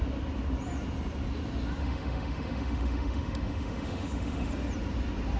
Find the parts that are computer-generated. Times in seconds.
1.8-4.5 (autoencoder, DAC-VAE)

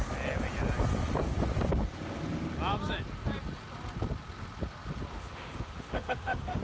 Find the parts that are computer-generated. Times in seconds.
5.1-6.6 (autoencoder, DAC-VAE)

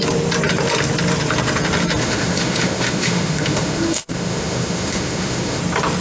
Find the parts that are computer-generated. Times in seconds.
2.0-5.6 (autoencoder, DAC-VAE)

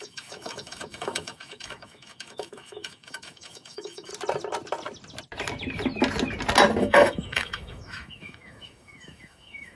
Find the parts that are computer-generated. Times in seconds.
0.0-4.1 (autoencoder, DAC-VAE); 6.8-9.8

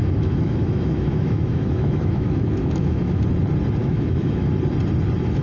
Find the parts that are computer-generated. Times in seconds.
0.0-3.2 (autoencoder, DAC-VAE); 3.8-4.5

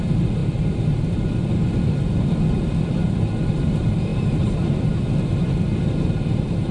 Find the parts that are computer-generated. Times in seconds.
none

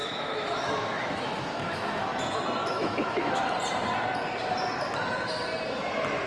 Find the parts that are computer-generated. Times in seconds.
0.0-2.2 (autoencoder, DAC-VAE); 2.6-3.4